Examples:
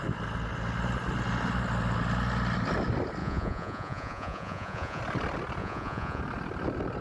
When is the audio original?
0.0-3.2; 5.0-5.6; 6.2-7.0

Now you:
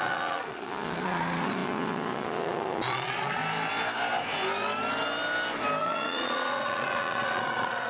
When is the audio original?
3.4-5.8

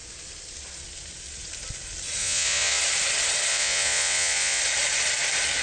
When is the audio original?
0.0-2.2; 2.8-3.5; 4.6-5.6

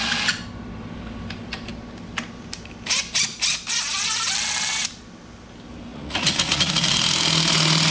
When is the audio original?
0.0-5.9; 6.7-7.9

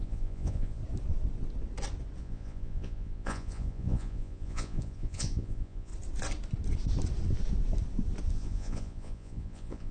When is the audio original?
0.8-2.2; 5.9-8.3